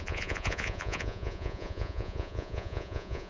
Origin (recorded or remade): remade